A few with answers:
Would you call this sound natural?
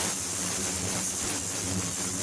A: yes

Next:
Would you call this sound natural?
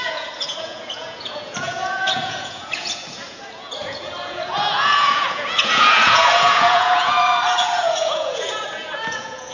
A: no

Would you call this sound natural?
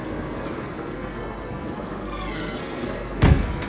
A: no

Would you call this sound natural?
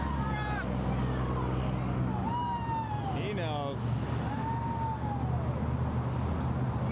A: yes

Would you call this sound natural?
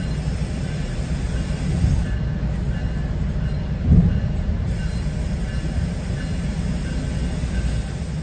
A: yes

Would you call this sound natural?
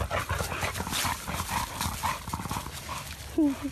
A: yes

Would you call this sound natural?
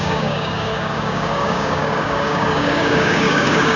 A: no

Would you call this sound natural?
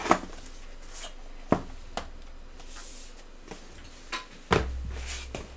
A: yes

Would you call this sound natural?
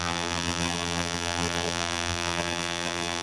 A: no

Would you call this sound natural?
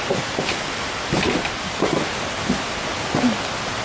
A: yes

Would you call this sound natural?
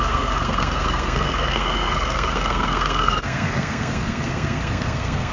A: no